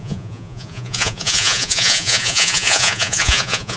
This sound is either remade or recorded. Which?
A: remade